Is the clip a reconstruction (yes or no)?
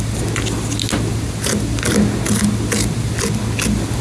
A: no